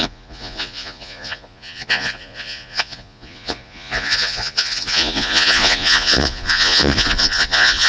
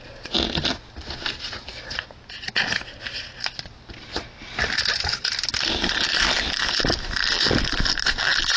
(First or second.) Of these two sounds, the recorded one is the second